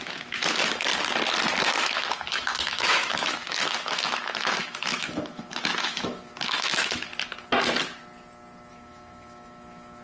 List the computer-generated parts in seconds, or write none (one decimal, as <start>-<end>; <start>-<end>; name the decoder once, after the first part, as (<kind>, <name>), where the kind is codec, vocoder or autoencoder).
0.0-0.9 (autoencoder, DAC-VAE); 1.6-7.1; 8.7-10.0